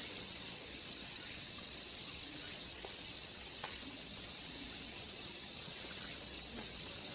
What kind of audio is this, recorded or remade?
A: remade